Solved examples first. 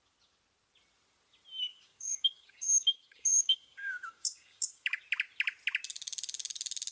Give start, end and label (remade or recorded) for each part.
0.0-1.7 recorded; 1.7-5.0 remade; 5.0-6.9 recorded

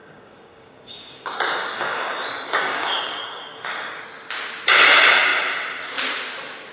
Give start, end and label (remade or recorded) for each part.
0.0-4.0 remade; 4.0-6.7 recorded

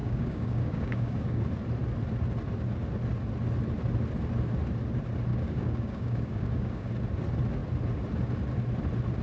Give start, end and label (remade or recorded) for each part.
0.0-1.4 remade; 1.4-5.3 recorded; 5.3-6.9 remade; 6.9-9.2 recorded